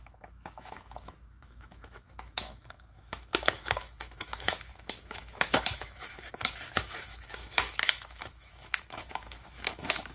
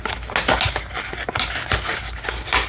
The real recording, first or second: second